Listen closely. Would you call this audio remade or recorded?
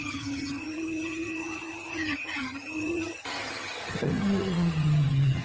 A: remade